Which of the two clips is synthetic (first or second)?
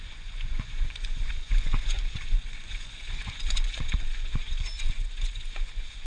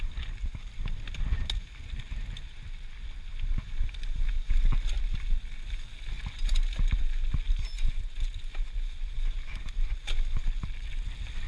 first